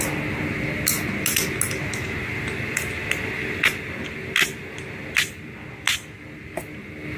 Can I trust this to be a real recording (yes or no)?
yes